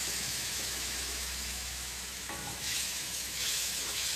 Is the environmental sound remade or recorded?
remade